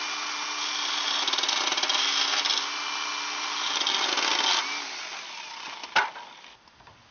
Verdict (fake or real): real